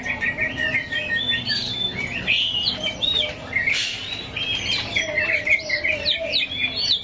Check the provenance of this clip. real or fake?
real